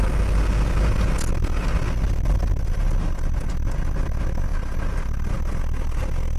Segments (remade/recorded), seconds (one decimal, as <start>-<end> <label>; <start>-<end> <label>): 0.0-6.4 recorded